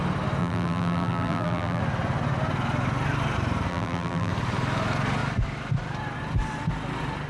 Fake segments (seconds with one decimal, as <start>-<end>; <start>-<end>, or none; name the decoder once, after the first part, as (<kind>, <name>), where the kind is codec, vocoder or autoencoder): 0.4-1.8 (vocoder, BigVGAN v2); 3.7-4.3